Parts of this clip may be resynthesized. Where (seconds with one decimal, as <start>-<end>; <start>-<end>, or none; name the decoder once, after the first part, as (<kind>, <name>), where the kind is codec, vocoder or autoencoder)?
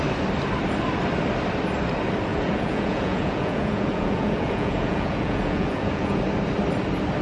2.3-6.2 (vocoder, Vocos)